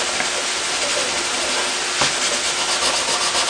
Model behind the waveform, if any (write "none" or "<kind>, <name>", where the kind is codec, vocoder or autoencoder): none